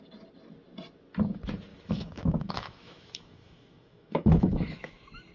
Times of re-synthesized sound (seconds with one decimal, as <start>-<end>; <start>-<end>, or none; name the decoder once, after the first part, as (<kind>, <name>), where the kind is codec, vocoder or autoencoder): 1.7-5.3 (autoencoder, DAC-VAE)